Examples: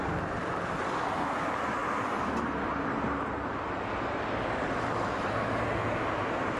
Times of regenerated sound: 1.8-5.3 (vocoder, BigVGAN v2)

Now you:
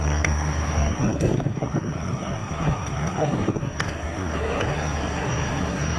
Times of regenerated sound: 0.0-6.0 (codec, SNAC)

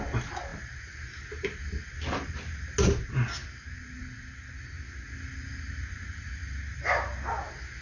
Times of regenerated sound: none

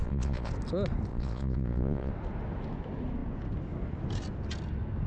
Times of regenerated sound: 0.0-0.5 (vocoder, Vocos); 1.1-2.1

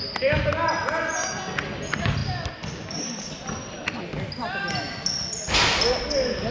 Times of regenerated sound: none